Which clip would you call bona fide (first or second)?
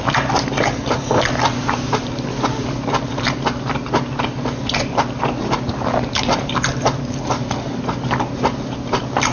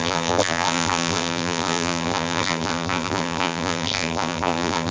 first